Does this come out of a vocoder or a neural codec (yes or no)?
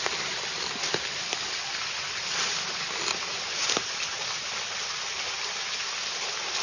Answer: no